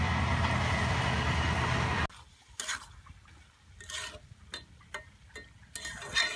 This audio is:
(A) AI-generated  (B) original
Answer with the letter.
B